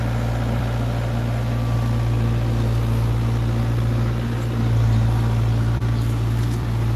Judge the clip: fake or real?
real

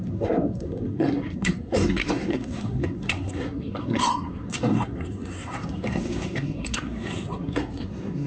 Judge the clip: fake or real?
fake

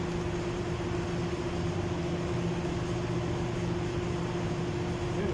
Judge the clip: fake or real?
real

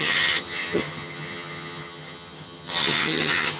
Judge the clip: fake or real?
fake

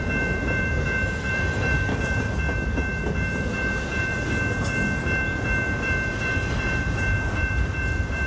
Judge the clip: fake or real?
fake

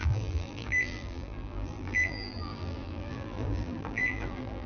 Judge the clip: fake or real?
fake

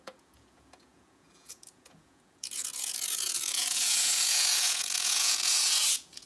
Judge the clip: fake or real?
fake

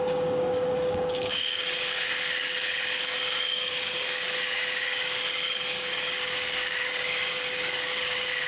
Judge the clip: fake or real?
fake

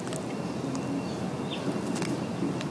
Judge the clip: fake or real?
real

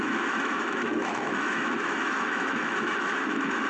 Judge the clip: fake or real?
fake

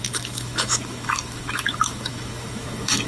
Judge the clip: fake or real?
fake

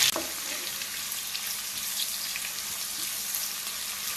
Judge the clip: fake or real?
real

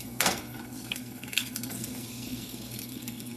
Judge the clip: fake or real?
fake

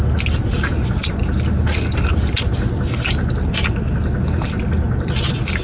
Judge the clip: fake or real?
real